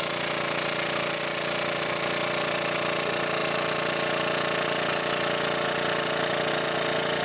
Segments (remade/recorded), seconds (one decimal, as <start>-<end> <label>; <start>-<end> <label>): 0.0-7.2 recorded